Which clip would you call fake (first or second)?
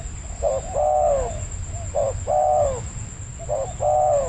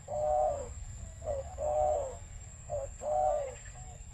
second